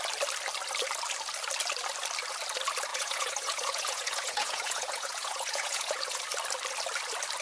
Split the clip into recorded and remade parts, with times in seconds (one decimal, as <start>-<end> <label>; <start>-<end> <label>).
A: 0.0-2.9 recorded; 2.9-6.2 remade; 6.2-7.4 recorded